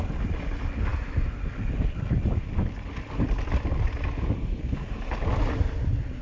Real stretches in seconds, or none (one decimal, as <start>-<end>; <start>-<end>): 0.0-6.2